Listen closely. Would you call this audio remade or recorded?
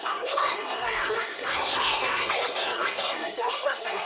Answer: remade